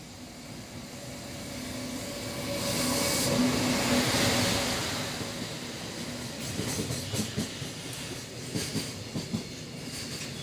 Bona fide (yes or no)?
yes